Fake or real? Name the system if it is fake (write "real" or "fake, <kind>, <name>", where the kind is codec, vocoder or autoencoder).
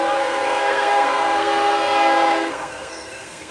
fake, codec, SNAC